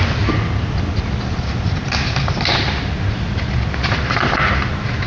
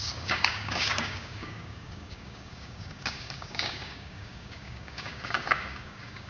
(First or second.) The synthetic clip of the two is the second